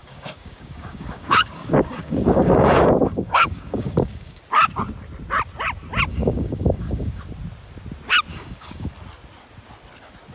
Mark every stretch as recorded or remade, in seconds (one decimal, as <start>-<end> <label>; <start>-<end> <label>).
0.0-4.4 remade; 4.4-6.1 recorded; 6.1-7.2 remade; 7.2-8.3 recorded; 8.3-8.9 remade; 8.9-10.3 recorded